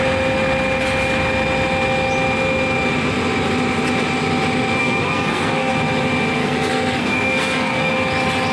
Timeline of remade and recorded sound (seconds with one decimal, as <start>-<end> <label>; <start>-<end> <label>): 0.0-4.8 recorded; 4.8-5.7 remade; 5.7-6.4 recorded; 6.4-7.9 remade; 7.9-8.5 recorded